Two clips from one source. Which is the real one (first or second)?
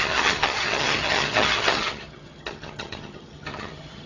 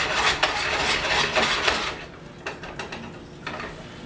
second